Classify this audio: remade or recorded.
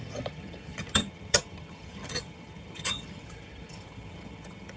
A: remade